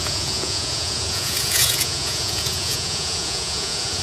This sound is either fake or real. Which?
fake